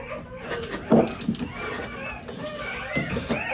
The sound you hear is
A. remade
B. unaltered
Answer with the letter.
B